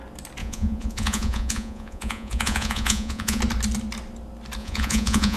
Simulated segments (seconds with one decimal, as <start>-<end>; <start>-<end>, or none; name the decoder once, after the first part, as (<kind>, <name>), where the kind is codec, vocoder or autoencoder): 0.4-3.4 (vocoder, Vocos); 4.6-5.4